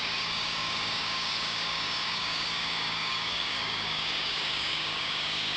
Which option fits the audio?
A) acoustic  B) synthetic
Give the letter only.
B